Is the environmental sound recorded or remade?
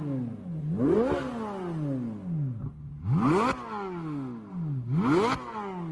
recorded